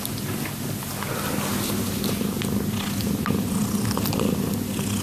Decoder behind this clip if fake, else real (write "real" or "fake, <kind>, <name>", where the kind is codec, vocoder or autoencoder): real